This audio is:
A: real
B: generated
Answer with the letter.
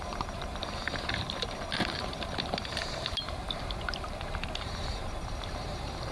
B